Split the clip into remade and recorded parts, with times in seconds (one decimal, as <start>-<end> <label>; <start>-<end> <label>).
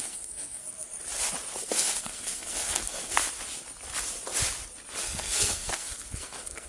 0.0-0.9 remade; 0.9-1.6 recorded; 1.6-3.2 remade; 3.2-5.0 recorded; 5.0-6.7 remade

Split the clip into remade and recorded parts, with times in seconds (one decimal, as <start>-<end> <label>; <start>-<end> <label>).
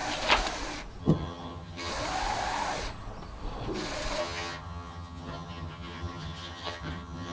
0.0-1.0 recorded; 1.0-1.9 remade; 1.9-4.2 recorded; 4.2-7.3 remade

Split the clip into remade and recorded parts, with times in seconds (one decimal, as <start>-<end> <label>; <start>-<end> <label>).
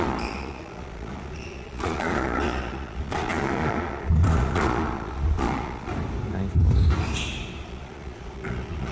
0.0-5.9 remade; 5.9-7.6 recorded; 7.6-8.9 remade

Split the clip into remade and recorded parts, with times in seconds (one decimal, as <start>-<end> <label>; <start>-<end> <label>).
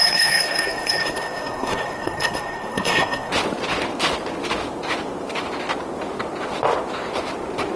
0.0-3.3 remade; 3.3-7.8 recorded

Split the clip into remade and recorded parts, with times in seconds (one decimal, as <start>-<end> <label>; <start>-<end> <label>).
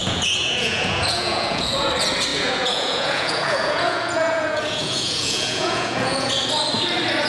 0.0-1.9 remade; 1.9-2.3 recorded; 2.3-6.3 remade; 6.3-7.3 recorded